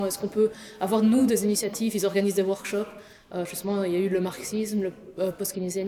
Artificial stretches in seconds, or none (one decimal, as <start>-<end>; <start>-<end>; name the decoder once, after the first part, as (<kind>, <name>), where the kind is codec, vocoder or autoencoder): 1.2-2.9 (autoencoder, DAC-VAE)